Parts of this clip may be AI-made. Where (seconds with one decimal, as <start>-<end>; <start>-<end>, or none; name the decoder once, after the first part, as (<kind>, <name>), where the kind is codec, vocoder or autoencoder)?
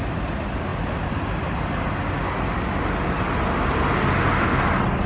none